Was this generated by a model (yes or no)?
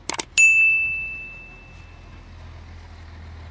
no